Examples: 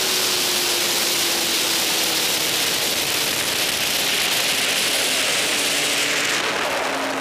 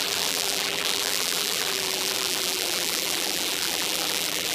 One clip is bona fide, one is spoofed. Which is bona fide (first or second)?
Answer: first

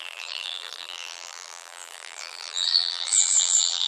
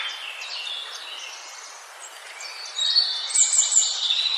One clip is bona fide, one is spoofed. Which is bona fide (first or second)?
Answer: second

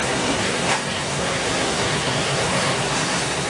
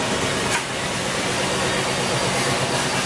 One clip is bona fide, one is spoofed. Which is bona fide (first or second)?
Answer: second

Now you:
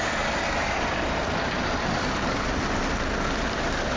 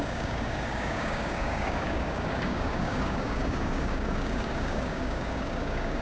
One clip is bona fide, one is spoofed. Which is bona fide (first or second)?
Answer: first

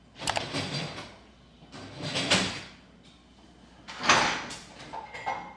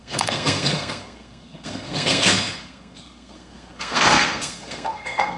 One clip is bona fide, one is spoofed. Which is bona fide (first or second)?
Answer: first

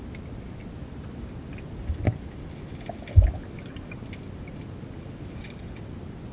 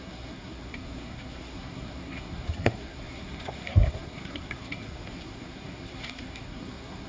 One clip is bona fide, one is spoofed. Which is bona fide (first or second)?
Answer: first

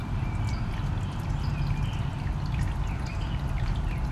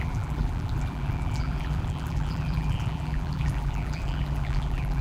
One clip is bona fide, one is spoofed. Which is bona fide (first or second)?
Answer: first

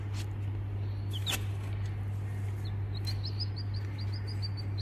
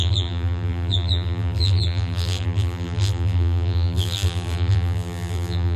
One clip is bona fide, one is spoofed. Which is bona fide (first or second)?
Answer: first